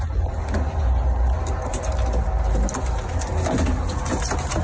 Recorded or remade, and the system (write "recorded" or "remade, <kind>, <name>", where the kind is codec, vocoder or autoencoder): recorded